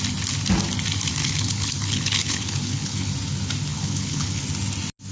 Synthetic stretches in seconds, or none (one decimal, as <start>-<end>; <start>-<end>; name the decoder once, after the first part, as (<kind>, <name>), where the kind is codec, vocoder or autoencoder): 1.2-3.1 (codec, HILCodec); 3.7-4.4

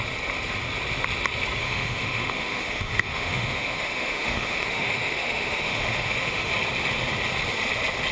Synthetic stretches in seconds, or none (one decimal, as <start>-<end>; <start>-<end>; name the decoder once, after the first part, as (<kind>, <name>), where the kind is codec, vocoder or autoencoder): 1.6-6.5 (autoencoder, DAC-VAE)

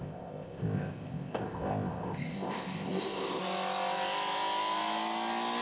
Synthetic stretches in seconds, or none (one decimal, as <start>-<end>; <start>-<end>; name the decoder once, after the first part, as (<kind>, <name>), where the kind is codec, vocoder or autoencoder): 0.0-3.4 (codec, ZipCodec)

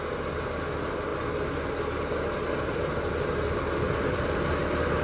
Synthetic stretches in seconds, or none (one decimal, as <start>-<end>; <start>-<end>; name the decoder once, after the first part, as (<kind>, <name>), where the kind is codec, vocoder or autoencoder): none